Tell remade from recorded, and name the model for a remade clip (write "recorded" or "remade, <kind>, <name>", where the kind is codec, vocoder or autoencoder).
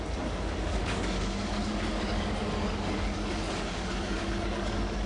remade, codec, DAC